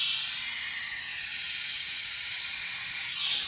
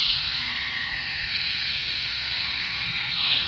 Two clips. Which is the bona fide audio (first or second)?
first